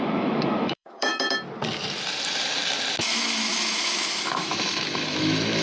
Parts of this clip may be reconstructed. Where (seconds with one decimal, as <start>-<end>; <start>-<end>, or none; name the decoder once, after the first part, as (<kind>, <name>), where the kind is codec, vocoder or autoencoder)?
0.0-1.1 (autoencoder, DAC-VAE); 3.0-5.6

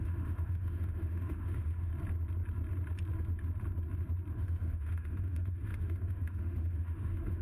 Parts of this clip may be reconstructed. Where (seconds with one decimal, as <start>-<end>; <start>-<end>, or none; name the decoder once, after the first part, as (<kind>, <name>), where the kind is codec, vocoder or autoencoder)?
0.0-1.9 (autoencoder, DAC-VAE); 4.3-7.4

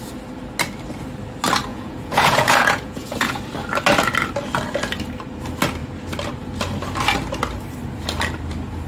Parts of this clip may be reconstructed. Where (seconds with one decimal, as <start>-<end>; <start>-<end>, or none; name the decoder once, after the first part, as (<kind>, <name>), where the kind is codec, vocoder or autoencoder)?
1.7-3.4 (vocoder, Vocos)

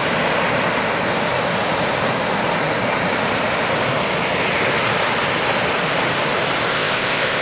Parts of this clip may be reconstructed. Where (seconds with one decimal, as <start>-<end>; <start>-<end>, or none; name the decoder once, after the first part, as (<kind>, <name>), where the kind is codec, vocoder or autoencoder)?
6.7-7.4 (codec, ZipCodec)

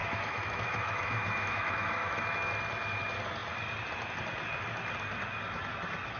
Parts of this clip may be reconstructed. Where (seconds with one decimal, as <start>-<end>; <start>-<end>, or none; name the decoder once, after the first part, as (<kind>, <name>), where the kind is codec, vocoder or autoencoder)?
0.0-2.5 (autoencoder, DAC-VAE)

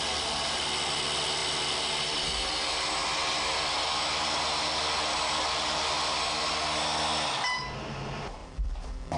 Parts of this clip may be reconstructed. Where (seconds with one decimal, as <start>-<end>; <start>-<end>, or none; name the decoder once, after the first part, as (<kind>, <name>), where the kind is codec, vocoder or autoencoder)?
none

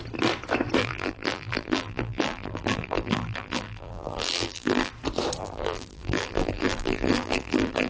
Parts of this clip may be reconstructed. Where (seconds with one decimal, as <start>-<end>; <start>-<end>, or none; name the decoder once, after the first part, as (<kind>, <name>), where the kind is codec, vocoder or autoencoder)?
0.8-4.9 (vocoder, BigVGAN v2); 5.4-7.9